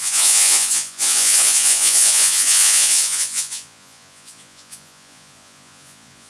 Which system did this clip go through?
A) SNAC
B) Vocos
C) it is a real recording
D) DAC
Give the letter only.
B